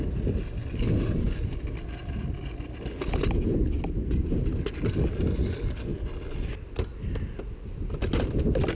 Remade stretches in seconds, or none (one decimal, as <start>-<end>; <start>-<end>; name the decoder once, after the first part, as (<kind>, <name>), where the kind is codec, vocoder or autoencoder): none